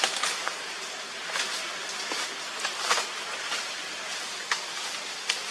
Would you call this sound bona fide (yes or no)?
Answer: yes